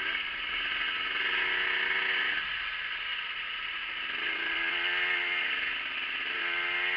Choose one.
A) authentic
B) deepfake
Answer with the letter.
A